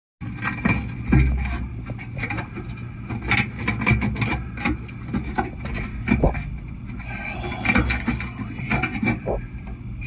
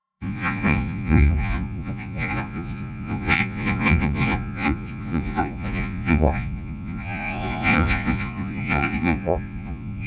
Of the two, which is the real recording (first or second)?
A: first